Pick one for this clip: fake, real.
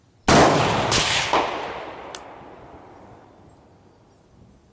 real